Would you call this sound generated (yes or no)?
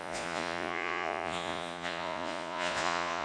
yes